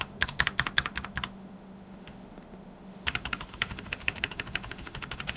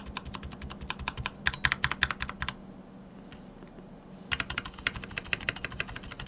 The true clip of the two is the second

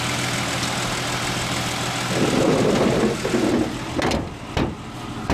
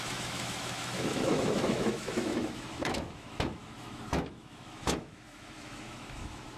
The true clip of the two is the first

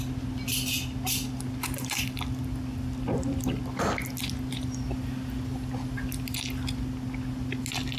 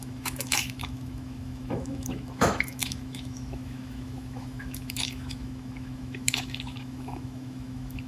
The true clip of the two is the first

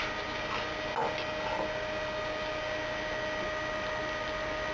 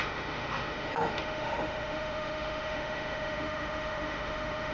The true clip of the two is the first